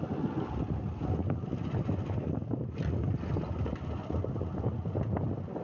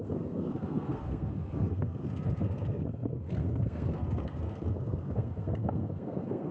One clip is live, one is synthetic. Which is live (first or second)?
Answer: first